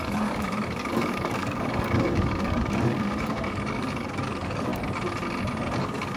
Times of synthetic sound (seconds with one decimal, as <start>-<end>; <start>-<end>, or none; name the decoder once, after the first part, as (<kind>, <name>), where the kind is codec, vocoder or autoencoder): 0.0-4.7 (codec, DAC); 5.8-6.2